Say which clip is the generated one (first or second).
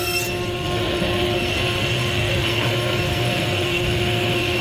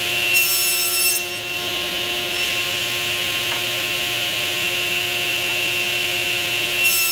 first